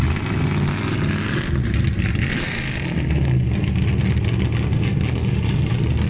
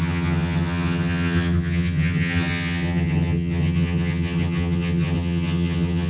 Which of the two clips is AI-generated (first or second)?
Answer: second